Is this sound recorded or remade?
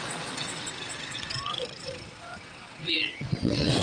remade